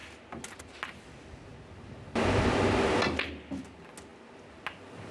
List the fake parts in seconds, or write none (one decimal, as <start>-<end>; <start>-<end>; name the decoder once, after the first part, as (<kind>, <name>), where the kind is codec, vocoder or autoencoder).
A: none